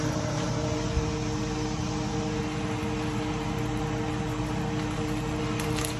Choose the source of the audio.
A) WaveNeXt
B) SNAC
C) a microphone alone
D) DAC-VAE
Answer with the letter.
C